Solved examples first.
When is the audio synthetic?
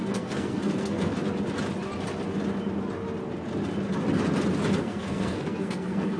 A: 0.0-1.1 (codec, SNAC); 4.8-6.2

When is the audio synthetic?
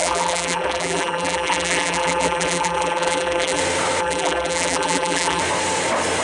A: 0.0-3.6 (vocoder, BigVGAN v2); 4.0-5.4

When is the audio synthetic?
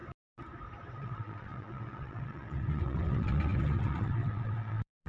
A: 0.9-5.1 (vocoder, WaveNeXt)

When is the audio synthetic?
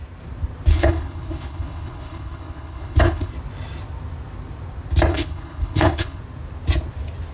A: 0.7-3.3 (codec, HILCodec); 5.1-6.2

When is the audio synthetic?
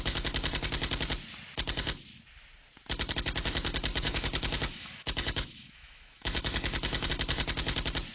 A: 3.9-7.1 (autoencoder, DAC-VAE)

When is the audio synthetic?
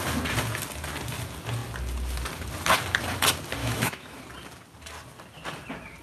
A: 3.6-4.2 (autoencoder, DAC-VAE)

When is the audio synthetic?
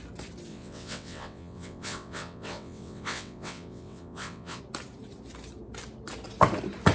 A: 0.5-4.6 (vocoder, WaveNeXt)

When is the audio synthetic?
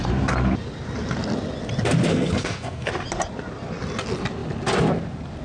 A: 2.1-2.9 (codec, SNAC)